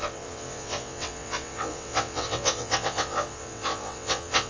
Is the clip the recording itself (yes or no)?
no